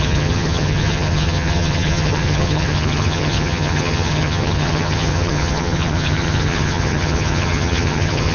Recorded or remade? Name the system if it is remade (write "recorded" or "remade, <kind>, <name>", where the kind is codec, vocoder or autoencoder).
remade, vocoder, HiFi-GAN